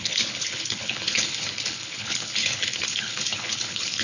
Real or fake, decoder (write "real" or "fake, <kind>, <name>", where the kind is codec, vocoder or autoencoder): fake, codec, HILCodec